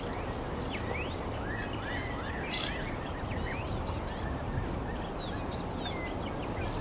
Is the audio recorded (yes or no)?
yes